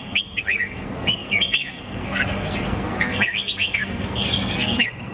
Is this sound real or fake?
fake